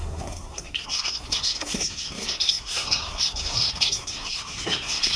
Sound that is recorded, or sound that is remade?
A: remade